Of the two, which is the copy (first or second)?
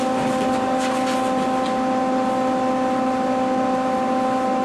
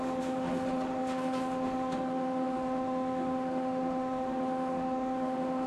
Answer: second